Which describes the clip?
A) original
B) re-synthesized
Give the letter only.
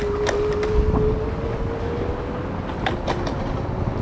A